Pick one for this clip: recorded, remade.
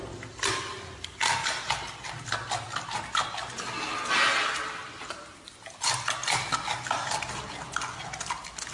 recorded